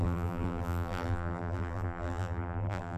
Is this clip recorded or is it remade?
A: remade